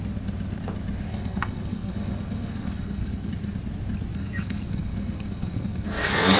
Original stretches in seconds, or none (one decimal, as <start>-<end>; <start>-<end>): 0.0-1.1; 3.3-4.1